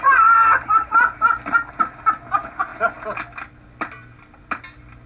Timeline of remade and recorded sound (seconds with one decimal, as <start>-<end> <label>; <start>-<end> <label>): 0.0-5.1 recorded